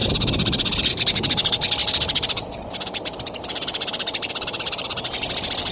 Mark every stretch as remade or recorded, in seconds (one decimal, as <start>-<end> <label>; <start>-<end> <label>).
0.0-5.7 recorded

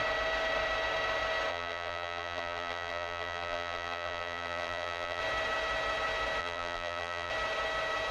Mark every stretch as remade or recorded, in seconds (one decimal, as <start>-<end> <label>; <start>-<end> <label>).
0.0-1.5 recorded; 1.5-5.2 remade; 5.2-6.4 recorded; 6.4-7.3 remade; 7.3-8.1 recorded

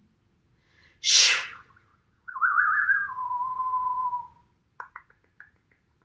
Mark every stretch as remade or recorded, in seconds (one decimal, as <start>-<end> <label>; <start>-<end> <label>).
0.0-1.1 recorded; 1.1-6.0 remade

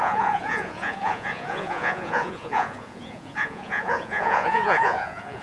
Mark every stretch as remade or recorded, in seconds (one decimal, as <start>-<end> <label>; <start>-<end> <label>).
0.0-5.4 remade